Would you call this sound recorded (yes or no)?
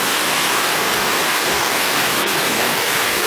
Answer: no